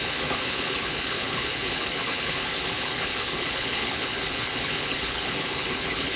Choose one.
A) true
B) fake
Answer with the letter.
B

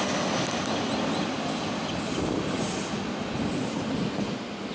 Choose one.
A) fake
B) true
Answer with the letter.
B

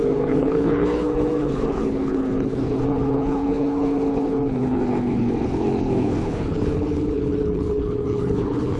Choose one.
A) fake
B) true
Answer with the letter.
A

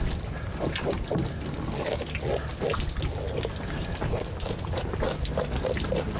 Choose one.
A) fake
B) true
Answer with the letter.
B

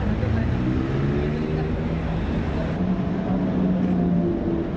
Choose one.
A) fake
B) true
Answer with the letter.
B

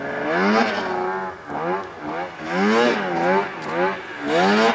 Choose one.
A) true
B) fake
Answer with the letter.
A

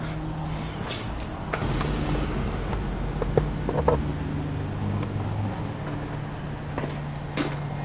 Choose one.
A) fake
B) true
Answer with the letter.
B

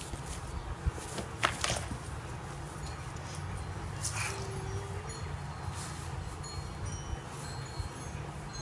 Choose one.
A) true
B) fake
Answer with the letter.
A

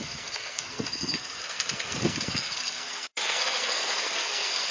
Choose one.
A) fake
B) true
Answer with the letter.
A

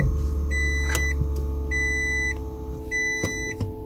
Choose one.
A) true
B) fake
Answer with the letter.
A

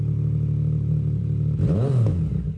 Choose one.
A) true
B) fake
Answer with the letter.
A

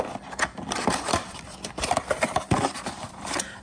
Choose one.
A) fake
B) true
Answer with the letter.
A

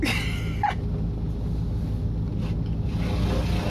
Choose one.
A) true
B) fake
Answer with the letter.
A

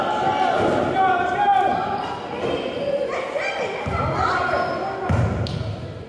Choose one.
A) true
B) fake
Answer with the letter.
A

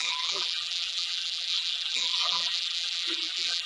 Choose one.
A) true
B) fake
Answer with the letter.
B